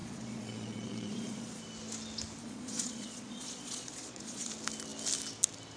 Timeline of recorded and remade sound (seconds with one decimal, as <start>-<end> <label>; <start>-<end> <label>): 0.0-1.6 remade; 1.6-2.4 recorded; 2.4-4.5 remade; 4.5-5.8 recorded